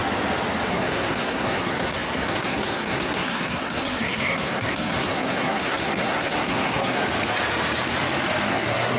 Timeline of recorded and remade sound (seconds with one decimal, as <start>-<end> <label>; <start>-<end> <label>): 0.0-0.7 recorded; 0.7-7.0 remade; 7.0-8.5 recorded; 8.5-9.0 remade